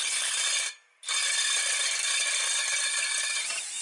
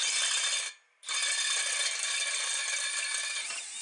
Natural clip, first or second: second